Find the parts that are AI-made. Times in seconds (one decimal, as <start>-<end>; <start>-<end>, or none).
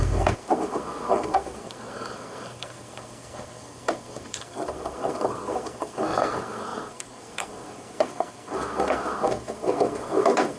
0.0-10.6